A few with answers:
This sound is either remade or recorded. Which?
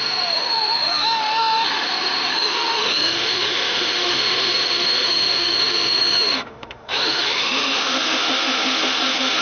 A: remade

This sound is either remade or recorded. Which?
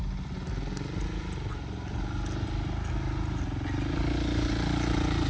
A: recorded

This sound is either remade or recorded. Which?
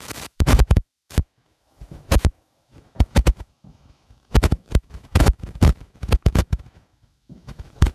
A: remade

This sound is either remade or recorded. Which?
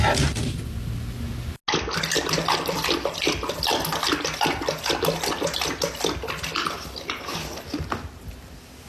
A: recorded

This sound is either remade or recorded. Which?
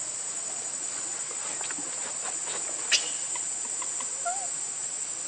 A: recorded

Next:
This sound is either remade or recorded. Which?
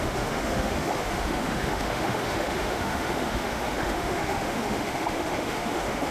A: remade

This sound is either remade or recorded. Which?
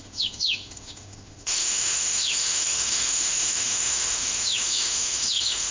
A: remade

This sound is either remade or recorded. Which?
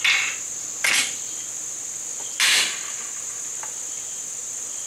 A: recorded